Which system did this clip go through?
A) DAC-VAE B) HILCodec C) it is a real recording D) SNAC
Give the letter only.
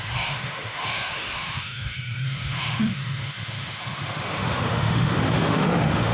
A